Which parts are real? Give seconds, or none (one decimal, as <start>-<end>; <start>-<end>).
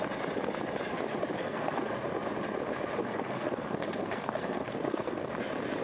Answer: 0.0-1.4; 1.9-3.0; 5.3-5.8